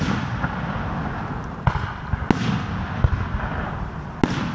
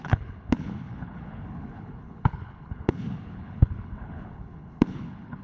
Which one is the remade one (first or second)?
second